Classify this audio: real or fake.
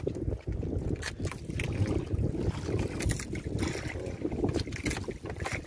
real